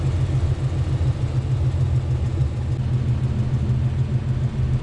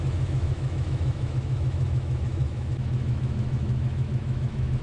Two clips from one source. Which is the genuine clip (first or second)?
first